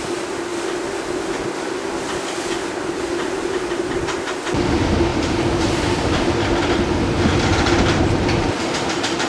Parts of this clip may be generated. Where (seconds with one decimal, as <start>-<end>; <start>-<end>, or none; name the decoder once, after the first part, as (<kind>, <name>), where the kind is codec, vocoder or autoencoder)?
5.1-5.7 (vocoder, BigVGAN v2); 7.5-9.3